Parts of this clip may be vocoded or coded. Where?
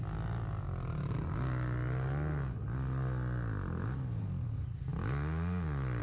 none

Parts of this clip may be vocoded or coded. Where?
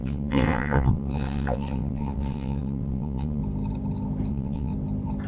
0.0-3.4 (vocoder, WaveNeXt); 4.3-4.7